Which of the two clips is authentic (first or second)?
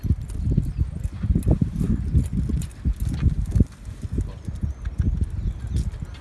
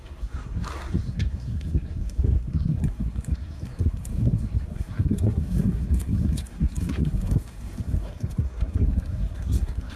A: first